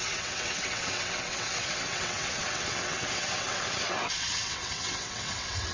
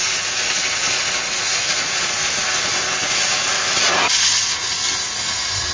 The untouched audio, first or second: second